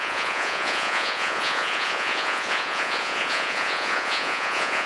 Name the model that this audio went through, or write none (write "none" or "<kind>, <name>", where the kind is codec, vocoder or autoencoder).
vocoder, Vocos